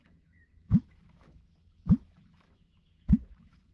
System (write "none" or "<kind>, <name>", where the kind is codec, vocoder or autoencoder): autoencoder, DAC-VAE